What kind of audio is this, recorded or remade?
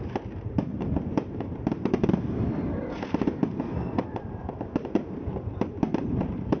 remade